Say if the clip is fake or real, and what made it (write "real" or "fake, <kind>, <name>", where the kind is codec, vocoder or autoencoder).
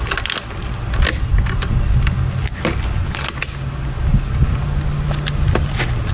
real